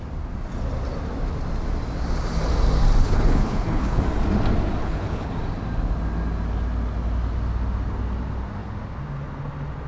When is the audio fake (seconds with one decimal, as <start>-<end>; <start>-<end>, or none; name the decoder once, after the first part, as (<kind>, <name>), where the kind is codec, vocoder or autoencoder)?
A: 3.0-4.0 (codec, HILCodec); 4.8-5.3